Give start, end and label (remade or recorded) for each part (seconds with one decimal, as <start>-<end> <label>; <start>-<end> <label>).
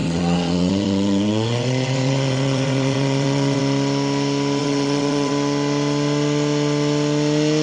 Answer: 0.0-3.6 remade; 3.6-4.6 recorded; 4.6-5.3 remade; 5.3-7.6 recorded